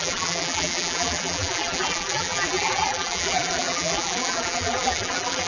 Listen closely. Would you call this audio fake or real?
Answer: fake